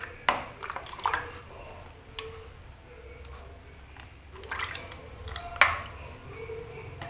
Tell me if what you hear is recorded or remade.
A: recorded